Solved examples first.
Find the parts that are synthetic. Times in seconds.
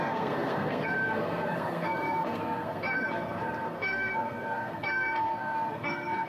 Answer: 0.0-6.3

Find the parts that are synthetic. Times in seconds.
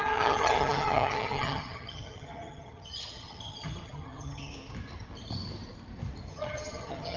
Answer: 0.0-4.5; 6.3-7.2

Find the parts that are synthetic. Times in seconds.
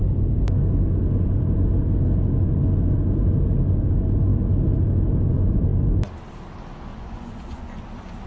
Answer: 6.9-7.8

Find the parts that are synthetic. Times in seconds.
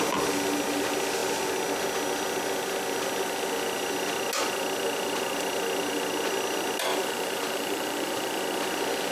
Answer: 6.9-8.3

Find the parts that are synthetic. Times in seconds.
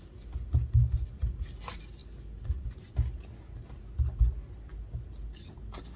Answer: none